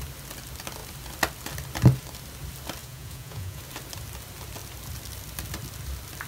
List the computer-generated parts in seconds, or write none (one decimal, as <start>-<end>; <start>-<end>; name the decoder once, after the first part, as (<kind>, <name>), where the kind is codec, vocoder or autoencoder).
2.8-3.6 (vocoder, Vocos)